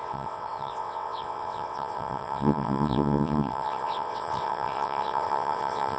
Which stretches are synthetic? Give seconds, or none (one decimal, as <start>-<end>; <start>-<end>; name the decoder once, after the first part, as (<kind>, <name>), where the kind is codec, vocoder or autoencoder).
0.0-6.0 (vocoder, WaveNeXt)

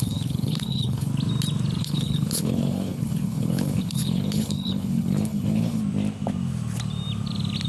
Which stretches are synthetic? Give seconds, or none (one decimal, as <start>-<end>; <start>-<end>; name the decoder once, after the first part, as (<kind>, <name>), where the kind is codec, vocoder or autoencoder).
0.0-1.1 (codec, HILCodec); 1.8-5.8

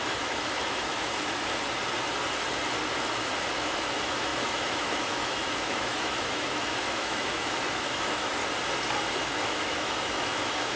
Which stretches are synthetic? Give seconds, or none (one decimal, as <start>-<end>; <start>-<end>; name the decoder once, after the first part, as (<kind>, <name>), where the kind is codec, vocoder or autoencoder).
0.0-1.4 (autoencoder, DAC-VAE); 3.5-8.4; 9.1-10.8

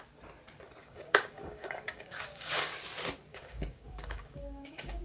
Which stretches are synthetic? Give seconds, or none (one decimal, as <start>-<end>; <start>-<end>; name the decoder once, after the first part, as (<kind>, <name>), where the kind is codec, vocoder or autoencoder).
0.8-2.8 (codec, DAC); 3.3-5.0

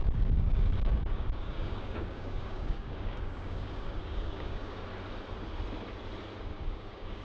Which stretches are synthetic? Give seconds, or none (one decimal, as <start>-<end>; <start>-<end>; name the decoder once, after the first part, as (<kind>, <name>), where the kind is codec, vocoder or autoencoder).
0.0-4.8 (codec, DAC); 6.4-7.2

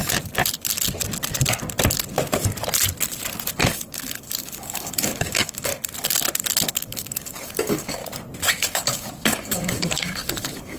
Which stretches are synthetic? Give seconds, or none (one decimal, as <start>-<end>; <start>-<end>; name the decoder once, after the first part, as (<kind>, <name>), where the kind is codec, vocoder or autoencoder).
3.6-5.7 (codec, DAC); 6.7-8.0; 8.5-10.8

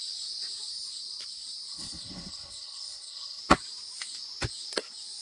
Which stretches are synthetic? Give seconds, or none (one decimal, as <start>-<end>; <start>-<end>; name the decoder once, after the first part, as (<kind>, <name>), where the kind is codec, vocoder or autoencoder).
1.7-3.4 (codec, HILCodec)

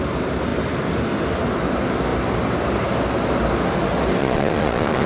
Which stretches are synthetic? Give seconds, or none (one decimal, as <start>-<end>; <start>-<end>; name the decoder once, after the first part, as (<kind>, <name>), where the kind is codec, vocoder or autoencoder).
4.2-5.1 (vocoder, Vocos)